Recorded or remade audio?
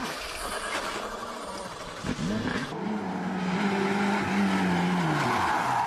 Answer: recorded